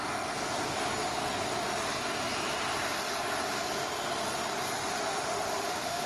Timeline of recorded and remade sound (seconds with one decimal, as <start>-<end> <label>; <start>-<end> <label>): 0.0-4.9 recorded; 4.9-6.1 remade